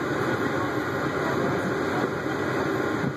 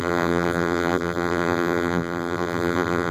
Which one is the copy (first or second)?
second